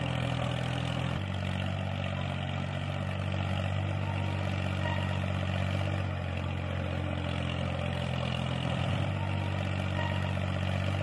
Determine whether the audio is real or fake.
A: real